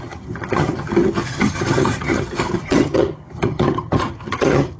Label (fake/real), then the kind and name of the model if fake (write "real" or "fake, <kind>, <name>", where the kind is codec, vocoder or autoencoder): fake, vocoder, HiFi-GAN